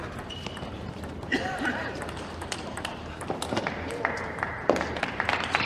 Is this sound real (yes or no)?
no